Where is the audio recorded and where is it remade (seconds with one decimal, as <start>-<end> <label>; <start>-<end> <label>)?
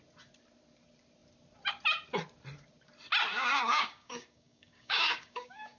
0.0-3.3 recorded; 3.3-5.8 remade